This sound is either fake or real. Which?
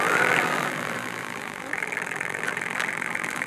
fake